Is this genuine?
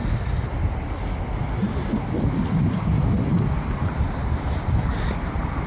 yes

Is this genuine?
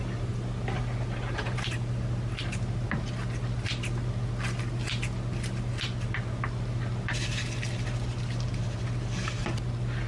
yes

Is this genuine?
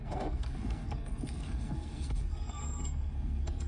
no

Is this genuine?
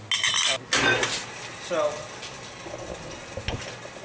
yes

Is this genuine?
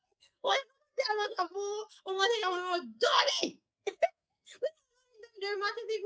no